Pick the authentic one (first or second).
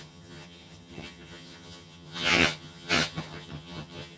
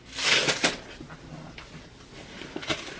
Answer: second